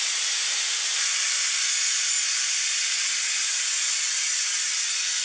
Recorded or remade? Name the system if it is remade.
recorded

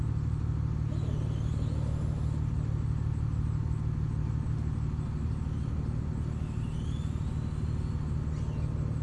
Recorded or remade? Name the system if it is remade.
recorded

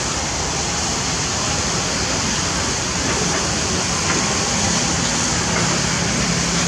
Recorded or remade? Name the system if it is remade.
recorded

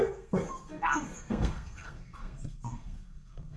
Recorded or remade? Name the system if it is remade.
remade, codec, SNAC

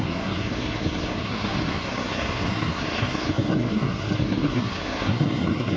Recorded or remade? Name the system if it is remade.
remade, codec, SNAC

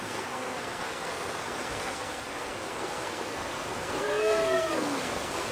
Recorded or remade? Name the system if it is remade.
remade, codec, SNAC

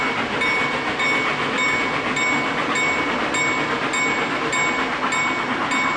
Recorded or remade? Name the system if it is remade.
recorded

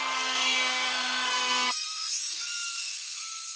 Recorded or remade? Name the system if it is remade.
remade, codec, SNAC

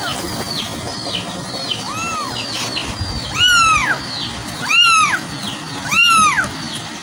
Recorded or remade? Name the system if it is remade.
recorded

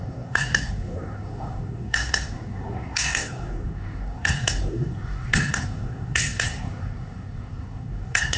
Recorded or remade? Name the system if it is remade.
remade, codec, SNAC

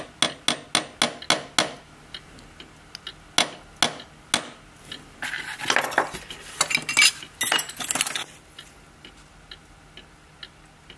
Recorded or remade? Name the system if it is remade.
recorded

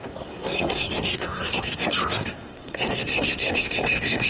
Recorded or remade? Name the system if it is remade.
remade, codec, SNAC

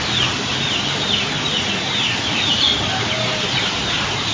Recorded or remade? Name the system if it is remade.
recorded